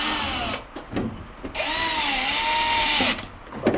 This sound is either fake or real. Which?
real